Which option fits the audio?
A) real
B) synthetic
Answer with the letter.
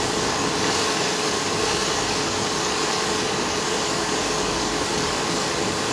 B